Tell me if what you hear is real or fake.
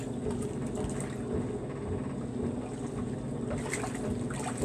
real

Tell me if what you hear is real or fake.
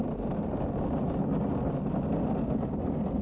real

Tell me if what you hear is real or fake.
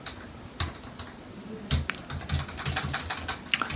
real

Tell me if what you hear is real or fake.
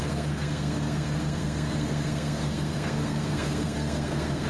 fake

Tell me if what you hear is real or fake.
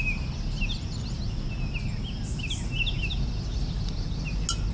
real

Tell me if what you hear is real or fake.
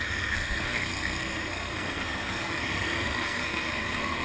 fake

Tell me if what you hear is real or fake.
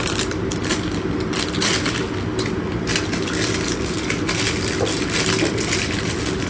real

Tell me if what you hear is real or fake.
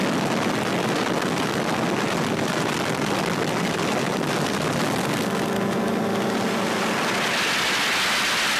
real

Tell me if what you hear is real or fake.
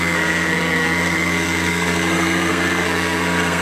fake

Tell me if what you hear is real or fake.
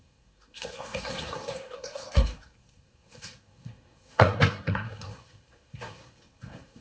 fake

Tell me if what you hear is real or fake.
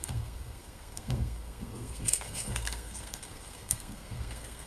fake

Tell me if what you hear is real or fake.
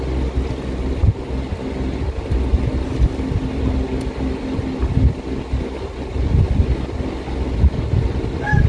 real